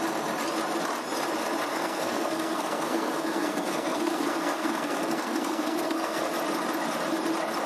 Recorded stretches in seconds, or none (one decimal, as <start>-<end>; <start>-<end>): 0.0-1.7; 6.3-7.7